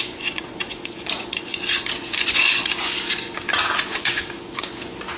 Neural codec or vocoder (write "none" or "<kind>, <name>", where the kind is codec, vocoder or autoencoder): vocoder, Vocos